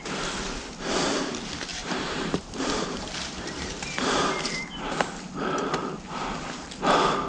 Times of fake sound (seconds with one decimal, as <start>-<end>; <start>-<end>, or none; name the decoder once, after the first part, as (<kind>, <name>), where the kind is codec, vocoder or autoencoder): 1.7-5.2 (vocoder, BigVGAN v2)